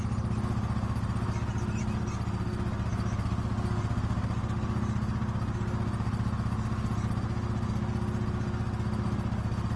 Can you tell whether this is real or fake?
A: real